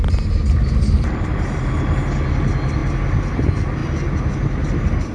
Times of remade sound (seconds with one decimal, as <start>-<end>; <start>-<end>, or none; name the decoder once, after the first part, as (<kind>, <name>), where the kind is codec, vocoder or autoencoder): none